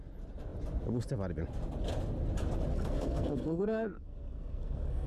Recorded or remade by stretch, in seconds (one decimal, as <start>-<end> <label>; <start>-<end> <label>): 0.0-2.7 recorded; 2.7-5.1 remade